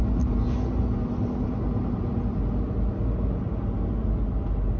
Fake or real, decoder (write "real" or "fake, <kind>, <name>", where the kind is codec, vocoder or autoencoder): real